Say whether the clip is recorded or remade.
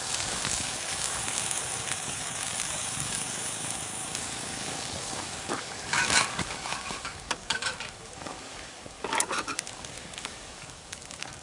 remade